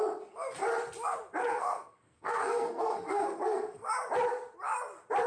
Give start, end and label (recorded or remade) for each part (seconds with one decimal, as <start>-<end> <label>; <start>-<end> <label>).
0.0-1.4 recorded; 1.4-3.9 remade; 3.9-5.3 recorded